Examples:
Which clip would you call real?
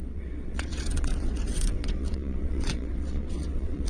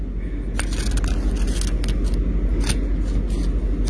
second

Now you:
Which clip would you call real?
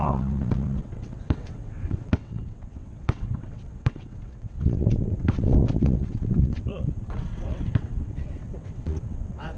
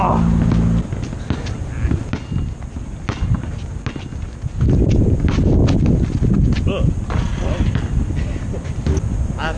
second